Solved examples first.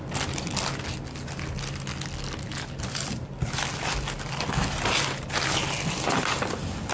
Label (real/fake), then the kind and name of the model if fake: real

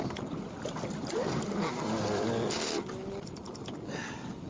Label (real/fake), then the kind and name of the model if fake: real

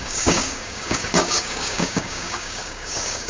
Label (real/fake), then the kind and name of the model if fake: fake, codec, DAC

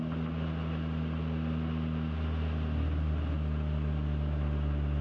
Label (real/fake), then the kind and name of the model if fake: real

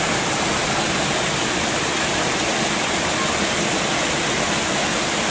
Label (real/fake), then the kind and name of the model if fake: real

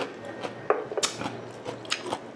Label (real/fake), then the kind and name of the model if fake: real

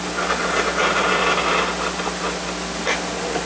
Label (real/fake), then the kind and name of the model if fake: real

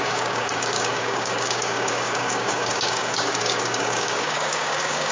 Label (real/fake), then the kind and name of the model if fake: fake, codec, DAC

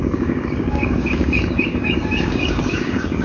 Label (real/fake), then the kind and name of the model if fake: fake, codec, DAC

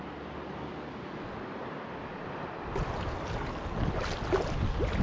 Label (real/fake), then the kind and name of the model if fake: real